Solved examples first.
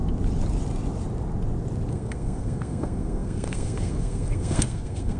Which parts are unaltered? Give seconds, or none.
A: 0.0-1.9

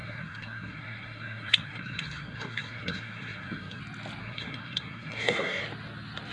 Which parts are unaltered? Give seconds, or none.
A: 3.8-4.2; 5.6-6.3

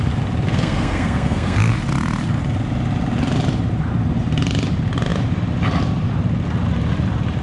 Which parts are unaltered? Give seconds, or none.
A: 0.0-0.5; 1.7-7.4

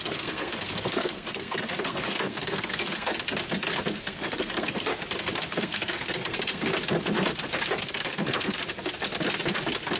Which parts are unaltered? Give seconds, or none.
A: 3.1-4.0; 4.9-5.5; 6.7-7.8; 8.6-10.0